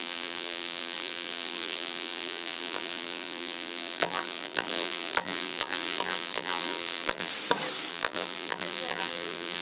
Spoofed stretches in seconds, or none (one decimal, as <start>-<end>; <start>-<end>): 0.0-7.3; 7.9-9.6